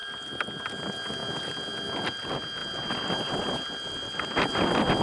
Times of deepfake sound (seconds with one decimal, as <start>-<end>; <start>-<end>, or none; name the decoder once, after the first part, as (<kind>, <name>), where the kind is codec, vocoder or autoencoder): none